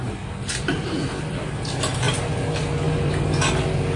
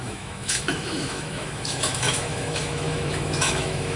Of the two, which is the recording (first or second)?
first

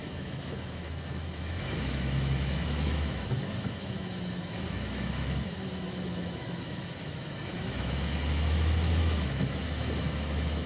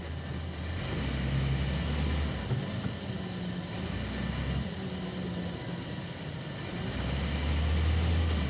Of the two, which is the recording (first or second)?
second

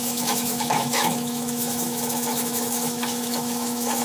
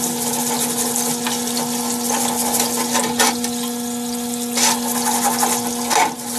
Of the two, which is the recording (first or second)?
second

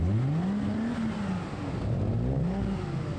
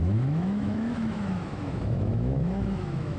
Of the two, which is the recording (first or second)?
first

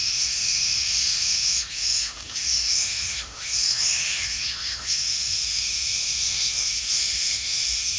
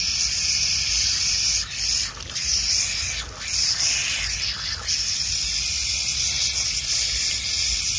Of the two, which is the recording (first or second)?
second